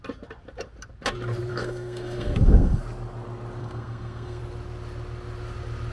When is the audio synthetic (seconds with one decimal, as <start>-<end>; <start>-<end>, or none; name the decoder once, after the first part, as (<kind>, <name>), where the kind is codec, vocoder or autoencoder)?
1.5-2.8 (codec, SNAC); 3.6-4.4